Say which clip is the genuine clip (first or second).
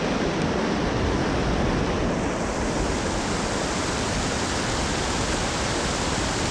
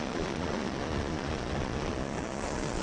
first